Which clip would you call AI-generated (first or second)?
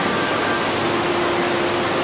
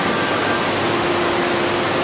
second